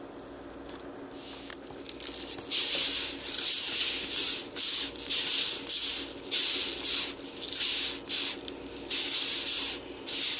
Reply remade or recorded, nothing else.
recorded